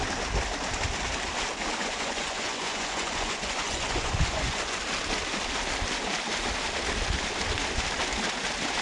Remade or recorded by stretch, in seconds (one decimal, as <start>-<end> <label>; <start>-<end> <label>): 0.0-1.8 recorded; 1.8-4.8 remade; 4.8-8.8 recorded